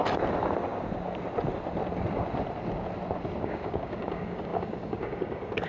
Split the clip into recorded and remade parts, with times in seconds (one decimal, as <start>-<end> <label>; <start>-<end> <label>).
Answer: 0.0-3.4 recorded; 3.4-5.7 remade